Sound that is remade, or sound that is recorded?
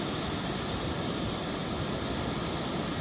recorded